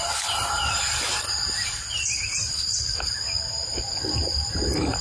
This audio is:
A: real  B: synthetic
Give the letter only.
A